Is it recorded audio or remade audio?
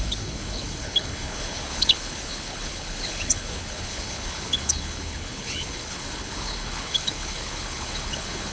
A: remade